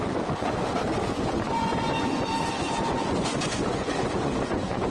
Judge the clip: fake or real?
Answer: fake